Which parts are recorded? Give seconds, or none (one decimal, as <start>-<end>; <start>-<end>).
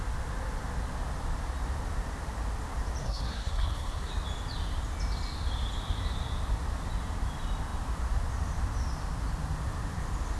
0.0-3.0; 4.1-10.4